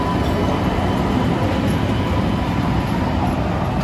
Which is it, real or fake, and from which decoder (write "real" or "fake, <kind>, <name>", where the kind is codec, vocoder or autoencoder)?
real